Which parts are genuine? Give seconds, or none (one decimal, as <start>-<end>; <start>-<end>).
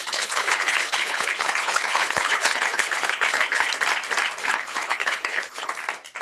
3.7-4.4; 5.7-6.2